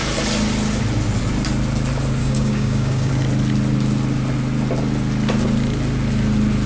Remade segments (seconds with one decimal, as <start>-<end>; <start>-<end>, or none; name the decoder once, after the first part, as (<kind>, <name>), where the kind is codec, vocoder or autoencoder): 2.2-3.1 (codec, DAC)